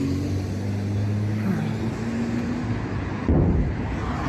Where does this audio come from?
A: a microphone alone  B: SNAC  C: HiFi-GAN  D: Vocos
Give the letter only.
A